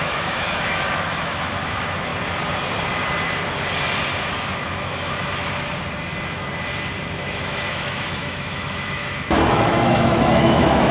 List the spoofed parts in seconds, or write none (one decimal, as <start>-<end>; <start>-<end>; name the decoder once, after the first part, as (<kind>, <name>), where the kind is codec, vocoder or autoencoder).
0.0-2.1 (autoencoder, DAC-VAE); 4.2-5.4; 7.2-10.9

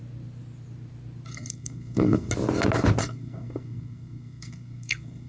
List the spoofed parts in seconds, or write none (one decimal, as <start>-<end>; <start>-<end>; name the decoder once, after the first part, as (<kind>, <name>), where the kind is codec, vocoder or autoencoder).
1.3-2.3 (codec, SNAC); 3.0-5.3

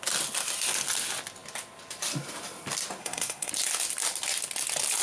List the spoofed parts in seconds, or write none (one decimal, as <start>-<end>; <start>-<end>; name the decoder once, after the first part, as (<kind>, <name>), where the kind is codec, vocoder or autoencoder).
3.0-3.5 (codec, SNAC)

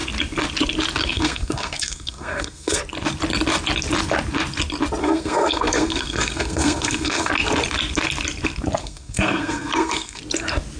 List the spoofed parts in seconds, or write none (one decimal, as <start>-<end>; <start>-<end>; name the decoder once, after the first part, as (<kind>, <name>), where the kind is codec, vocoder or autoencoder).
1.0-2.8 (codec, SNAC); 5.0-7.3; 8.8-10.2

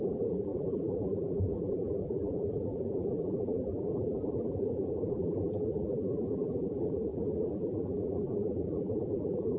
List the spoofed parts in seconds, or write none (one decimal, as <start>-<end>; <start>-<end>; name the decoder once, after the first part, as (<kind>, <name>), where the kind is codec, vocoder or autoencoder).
0.0-9.6 (vocoder, BigVGAN v2)

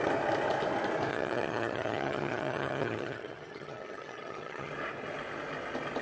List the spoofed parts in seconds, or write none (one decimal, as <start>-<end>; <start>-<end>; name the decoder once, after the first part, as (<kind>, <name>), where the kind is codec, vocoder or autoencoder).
1.1-4.7 (vocoder, HiFi-GAN)